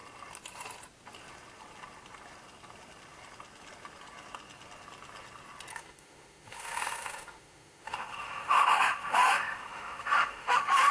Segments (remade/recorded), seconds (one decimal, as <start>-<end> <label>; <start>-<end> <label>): 0.0-5.7 recorded; 5.7-10.9 remade